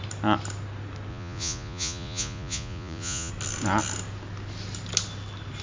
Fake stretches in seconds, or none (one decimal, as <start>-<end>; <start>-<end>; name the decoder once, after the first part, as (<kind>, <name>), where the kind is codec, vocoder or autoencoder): 1.1-3.3 (vocoder, Vocos)